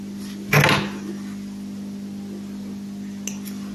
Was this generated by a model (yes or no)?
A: no